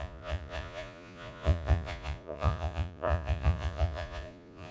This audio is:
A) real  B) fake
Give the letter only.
B